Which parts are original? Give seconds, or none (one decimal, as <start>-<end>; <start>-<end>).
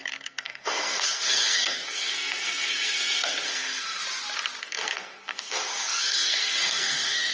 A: 4.0-4.6